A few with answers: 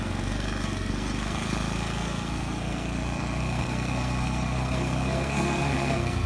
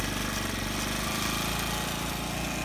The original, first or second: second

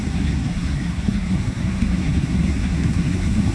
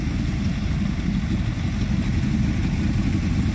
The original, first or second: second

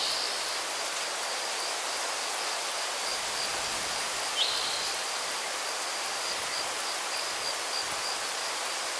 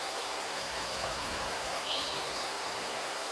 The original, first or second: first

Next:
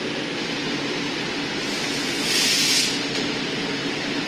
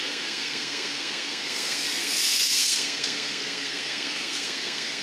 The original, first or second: first